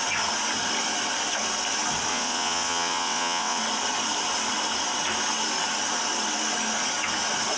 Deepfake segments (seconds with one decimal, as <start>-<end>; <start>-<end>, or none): 2.1-3.6